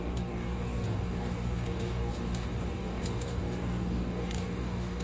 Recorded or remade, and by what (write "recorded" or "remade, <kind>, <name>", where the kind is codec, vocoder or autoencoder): remade, codec, DAC